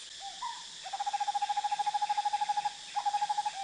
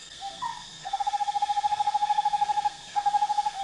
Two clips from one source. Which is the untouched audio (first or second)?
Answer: first